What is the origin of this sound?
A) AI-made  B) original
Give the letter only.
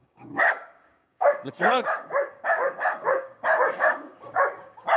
A